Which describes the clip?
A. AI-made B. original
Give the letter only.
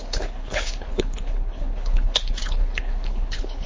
A